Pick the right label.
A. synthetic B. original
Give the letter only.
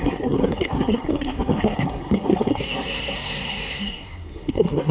A